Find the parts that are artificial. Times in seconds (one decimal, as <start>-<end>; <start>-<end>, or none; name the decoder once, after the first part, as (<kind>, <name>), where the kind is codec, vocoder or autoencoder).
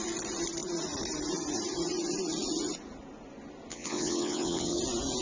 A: 3.7-4.8 (vocoder, WaveNeXt)